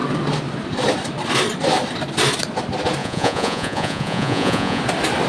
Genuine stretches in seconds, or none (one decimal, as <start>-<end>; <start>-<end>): 0.0-3.0; 4.8-5.3